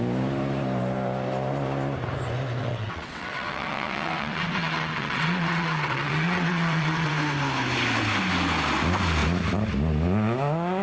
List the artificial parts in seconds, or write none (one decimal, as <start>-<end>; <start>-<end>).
2.6-7.1